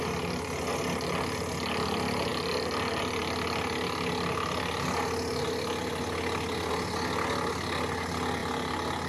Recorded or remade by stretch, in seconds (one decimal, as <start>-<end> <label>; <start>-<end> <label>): 0.0-9.1 recorded